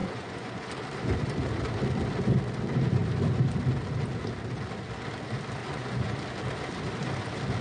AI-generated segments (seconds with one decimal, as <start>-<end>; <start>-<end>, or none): 0.0-0.7; 5.6-6.2